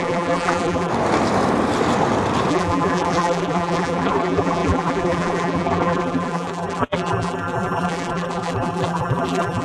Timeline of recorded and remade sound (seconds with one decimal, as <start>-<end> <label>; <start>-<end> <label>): 0.0-0.9 remade; 0.9-2.5 recorded; 2.5-9.6 remade